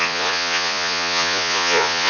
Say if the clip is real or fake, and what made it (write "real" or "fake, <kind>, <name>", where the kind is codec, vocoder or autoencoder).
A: fake, vocoder, Vocos